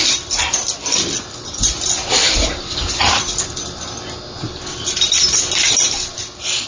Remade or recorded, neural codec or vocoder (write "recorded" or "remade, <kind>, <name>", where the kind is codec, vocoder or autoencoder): recorded